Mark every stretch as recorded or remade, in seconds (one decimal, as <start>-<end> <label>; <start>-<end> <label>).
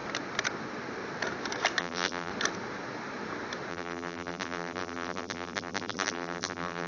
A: 0.0-1.8 recorded; 1.8-2.3 remade; 2.3-3.7 recorded; 3.7-6.9 remade